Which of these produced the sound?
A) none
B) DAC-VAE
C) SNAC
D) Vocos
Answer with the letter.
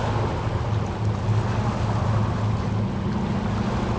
A